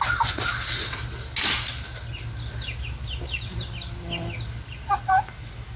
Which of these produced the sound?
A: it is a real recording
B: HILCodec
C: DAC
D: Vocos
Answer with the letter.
A